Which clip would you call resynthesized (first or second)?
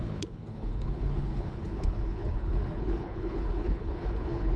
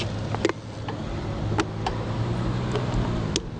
first